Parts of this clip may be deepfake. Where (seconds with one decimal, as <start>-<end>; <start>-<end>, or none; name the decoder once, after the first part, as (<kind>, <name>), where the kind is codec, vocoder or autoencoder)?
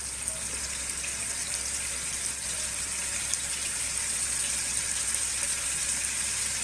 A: 1.1-3.8 (vocoder, BigVGAN v2)